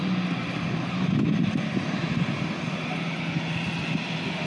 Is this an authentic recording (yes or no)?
yes